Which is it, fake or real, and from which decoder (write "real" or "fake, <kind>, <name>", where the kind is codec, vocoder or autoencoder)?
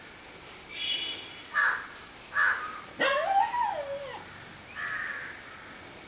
real